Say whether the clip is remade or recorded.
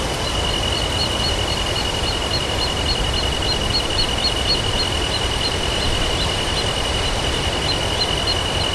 recorded